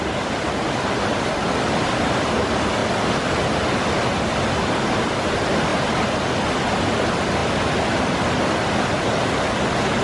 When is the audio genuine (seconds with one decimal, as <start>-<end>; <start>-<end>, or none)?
0.0-10.0